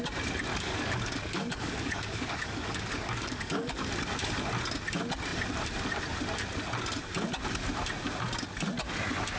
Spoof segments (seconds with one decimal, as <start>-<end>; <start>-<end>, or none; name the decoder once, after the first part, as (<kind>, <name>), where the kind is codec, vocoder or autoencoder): 0.5-3.9 (codec, DAC)

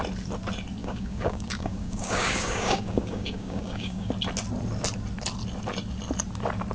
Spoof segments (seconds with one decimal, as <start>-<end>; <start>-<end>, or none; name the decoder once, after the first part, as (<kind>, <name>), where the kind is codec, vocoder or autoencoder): 0.8-4.1 (codec, DAC)

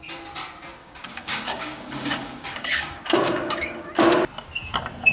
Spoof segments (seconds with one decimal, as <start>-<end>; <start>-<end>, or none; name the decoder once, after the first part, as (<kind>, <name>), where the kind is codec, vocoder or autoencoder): 0.8-3.9 (codec, DAC)